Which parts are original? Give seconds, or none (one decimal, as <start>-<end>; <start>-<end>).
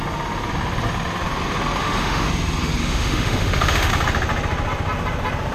0.0-1.8; 2.3-2.8; 3.9-5.5